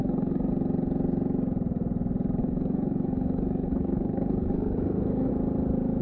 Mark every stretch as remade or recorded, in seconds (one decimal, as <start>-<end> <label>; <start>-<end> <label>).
0.0-0.5 remade; 0.5-2.4 recorded; 2.4-5.3 remade; 5.3-6.0 recorded